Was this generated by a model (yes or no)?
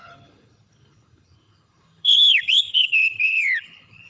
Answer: yes